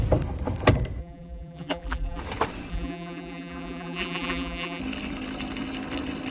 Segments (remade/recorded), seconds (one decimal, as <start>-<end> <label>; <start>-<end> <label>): 0.0-1.0 recorded; 1.0-2.2 remade; 2.2-2.7 recorded; 2.7-4.8 remade; 4.8-6.3 recorded